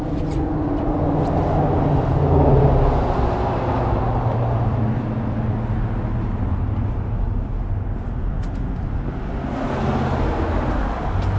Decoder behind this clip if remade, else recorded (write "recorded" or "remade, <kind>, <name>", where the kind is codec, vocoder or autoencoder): recorded